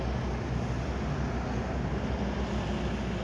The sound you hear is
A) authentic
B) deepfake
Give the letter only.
A